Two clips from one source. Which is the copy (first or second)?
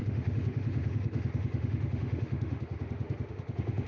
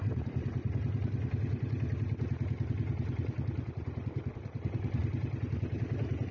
first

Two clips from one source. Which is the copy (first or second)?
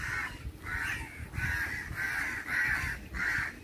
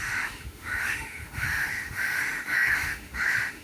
second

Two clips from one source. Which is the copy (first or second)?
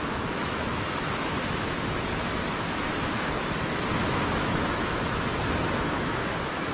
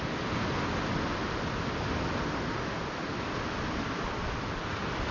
first